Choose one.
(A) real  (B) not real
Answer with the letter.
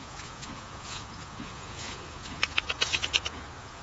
B